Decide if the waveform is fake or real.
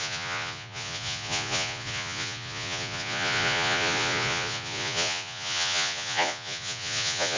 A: fake